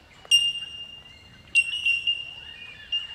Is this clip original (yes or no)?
yes